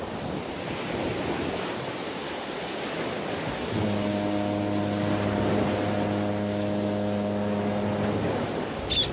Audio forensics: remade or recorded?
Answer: recorded